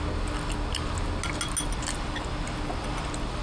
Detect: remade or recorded recorded